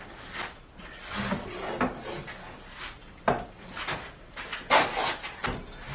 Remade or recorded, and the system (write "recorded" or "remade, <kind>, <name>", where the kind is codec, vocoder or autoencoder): recorded